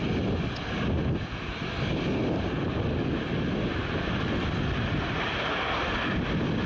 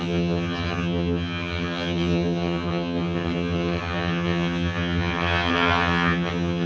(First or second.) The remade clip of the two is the second